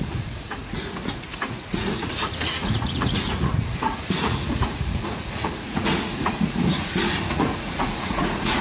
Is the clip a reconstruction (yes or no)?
yes